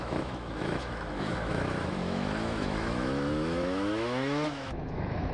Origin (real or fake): fake